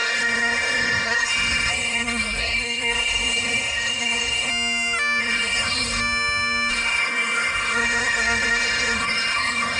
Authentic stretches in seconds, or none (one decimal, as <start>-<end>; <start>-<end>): 4.5-5.2; 6.0-6.7